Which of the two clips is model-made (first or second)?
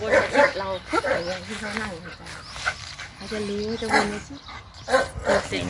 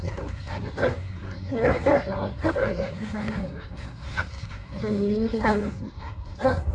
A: second